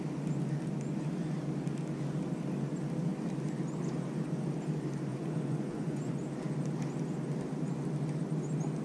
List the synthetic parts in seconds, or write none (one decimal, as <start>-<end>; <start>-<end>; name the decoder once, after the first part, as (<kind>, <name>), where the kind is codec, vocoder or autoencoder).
5.1-6.1 (vocoder, Vocos)